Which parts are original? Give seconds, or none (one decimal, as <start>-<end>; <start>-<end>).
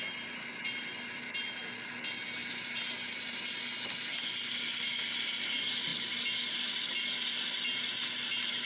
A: 0.0-2.4; 3.6-8.6